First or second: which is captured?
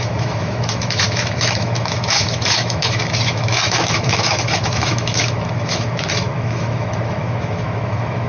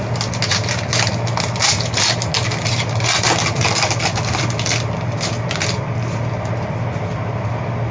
second